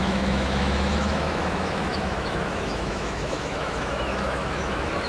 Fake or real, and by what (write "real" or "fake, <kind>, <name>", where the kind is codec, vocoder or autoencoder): fake, autoencoder, DAC-VAE